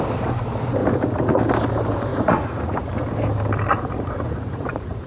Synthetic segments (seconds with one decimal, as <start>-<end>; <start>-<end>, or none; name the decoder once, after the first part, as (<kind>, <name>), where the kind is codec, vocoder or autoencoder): 0.8-1.4 (vocoder, Vocos); 2.1-2.9; 3.7-5.1